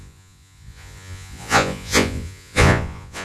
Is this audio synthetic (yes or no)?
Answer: yes